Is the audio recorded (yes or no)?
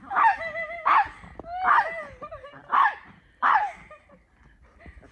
yes